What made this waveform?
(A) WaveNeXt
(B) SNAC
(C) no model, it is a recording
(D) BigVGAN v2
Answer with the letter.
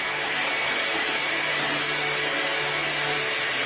C